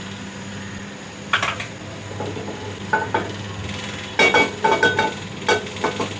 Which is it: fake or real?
real